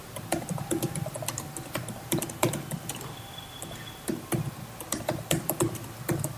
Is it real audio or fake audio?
fake